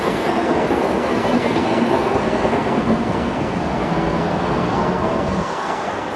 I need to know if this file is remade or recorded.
remade